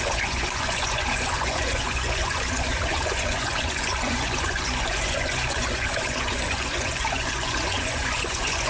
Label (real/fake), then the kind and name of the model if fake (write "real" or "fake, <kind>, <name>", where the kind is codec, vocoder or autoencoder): fake, vocoder, Vocos